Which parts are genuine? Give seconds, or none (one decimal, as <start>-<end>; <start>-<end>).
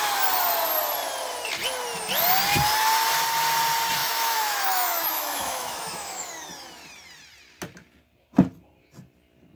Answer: 0.0-4.0; 6.3-9.6